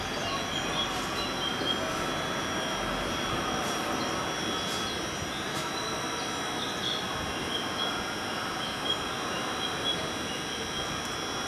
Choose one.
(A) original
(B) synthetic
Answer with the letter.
A